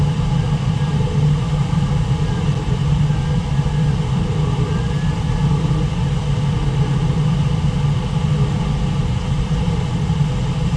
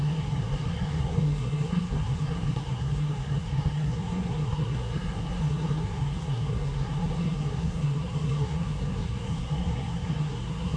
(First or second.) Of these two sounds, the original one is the first